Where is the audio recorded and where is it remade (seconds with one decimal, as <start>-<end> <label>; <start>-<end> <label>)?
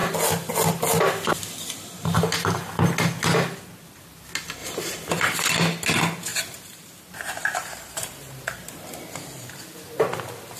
0.0-4.6 recorded; 4.6-5.1 remade; 5.1-6.3 recorded; 6.3-9.6 remade; 9.6-10.6 recorded